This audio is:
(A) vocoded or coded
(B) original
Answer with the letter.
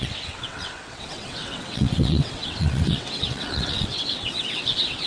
A